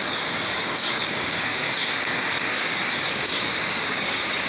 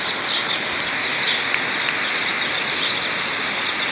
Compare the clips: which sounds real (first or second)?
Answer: second